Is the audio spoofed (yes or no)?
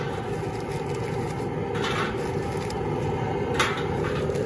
no